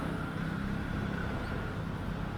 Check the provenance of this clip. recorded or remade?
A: recorded